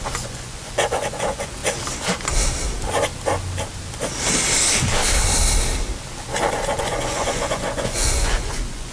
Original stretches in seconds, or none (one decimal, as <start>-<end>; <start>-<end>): 1.6-6.8